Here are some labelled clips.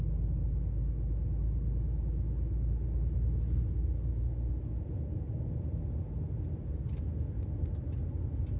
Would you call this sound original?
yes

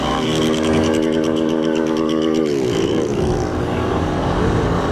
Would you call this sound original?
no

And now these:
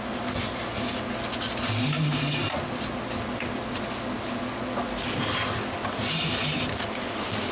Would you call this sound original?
yes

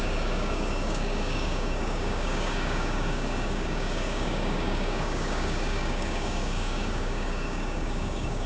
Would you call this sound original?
no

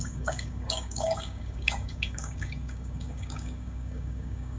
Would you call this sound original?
no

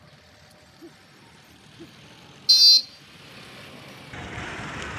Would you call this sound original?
yes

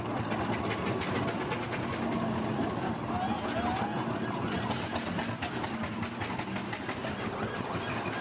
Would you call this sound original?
yes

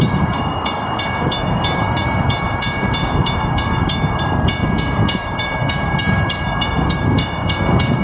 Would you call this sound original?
no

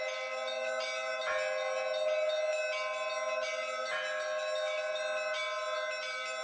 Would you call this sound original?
yes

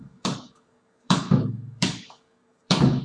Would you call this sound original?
no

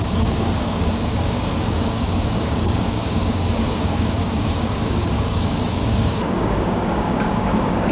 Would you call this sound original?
no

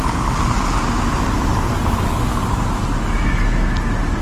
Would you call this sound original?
yes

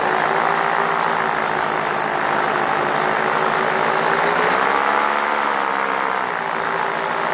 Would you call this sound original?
yes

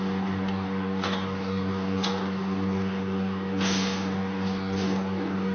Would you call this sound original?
no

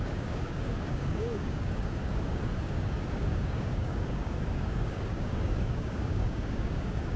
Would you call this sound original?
no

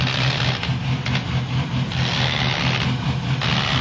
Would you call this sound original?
yes